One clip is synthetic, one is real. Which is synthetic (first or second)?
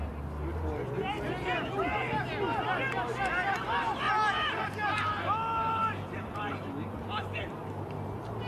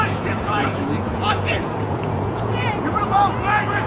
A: second